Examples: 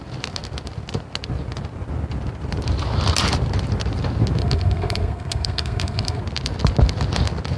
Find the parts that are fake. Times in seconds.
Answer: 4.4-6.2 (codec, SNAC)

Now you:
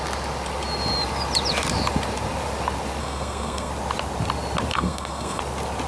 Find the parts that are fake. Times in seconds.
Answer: 3.0-3.7 (codec, SNAC); 4.7-5.4

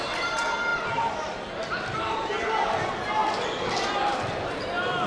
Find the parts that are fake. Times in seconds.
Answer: none

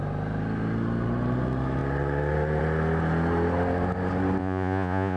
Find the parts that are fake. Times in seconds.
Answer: 4.4-5.2 (vocoder, Vocos)

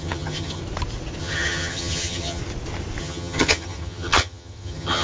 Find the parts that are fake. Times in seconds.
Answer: 0.0-0.6 (vocoder, HiFi-GAN); 1.2-2.4; 3.0-5.0

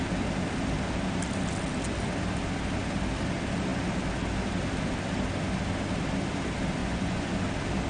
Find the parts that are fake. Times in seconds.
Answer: 6.8-7.3 (vocoder, Vocos)

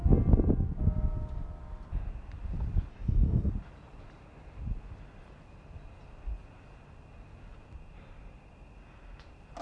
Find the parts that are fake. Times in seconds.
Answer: 2.9-3.5 (codec, DAC)